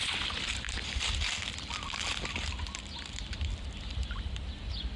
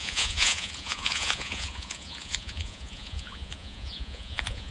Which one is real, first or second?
first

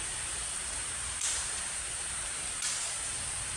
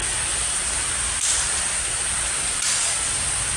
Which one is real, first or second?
second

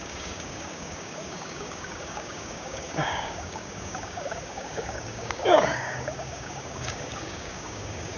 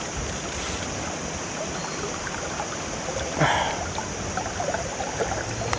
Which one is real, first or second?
second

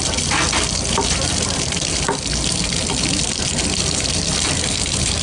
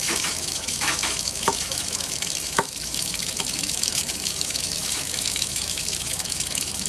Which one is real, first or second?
first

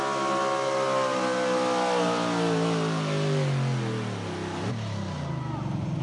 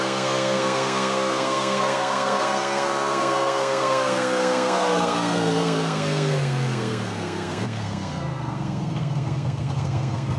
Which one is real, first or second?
first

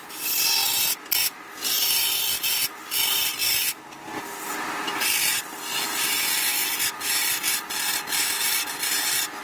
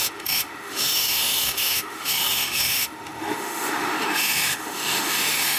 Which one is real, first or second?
first